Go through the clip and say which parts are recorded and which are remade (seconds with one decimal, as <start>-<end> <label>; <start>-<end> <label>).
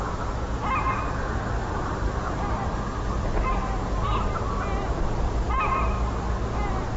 0.0-1.6 recorded; 1.6-5.5 remade; 5.5-7.0 recorded